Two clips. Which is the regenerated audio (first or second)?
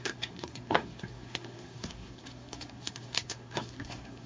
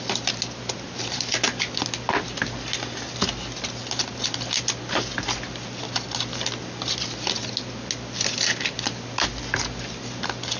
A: first